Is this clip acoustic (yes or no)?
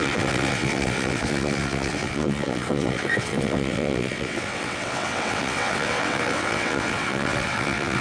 no